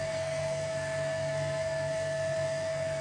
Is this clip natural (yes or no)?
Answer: no